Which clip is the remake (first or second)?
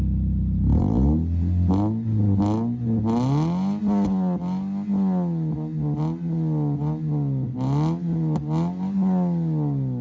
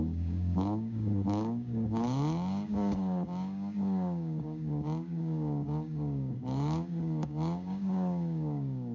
second